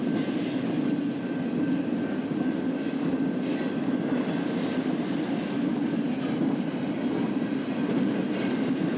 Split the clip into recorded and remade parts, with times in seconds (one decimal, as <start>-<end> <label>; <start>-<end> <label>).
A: 0.0-9.0 recorded